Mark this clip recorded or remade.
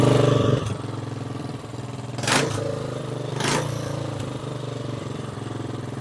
remade